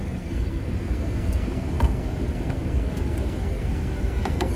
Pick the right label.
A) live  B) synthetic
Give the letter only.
B